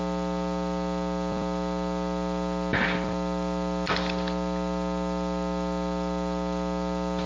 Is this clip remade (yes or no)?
no